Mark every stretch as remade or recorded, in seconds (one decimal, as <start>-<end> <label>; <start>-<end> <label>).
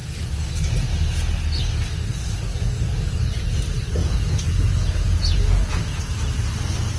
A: 0.0-4.0 recorded; 4.0-6.0 remade; 6.0-7.0 recorded